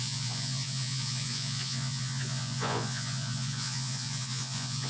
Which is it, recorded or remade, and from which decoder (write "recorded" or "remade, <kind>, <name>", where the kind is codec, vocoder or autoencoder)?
remade, vocoder, Vocos